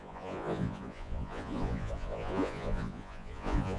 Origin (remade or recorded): remade